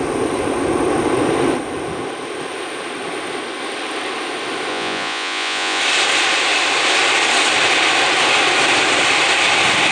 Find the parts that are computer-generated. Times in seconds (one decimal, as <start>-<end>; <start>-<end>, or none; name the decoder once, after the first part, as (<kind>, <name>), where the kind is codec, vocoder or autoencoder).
4.7-5.8 (vocoder, Vocos)